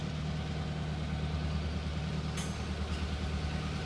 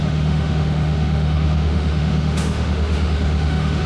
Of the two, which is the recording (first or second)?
first